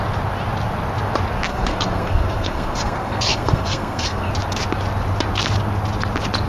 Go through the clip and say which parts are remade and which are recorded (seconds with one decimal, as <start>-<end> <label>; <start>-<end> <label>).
0.0-1.5 recorded; 1.5-4.3 remade; 4.3-6.5 recorded